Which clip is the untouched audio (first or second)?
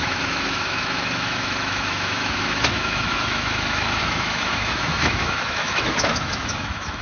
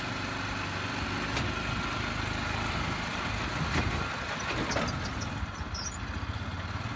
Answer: second